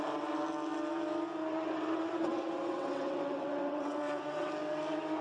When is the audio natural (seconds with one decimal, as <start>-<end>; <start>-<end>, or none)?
0.0-1.4; 4.5-5.2